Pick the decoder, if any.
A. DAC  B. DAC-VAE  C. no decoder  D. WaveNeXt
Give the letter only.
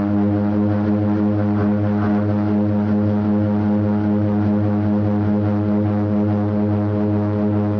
C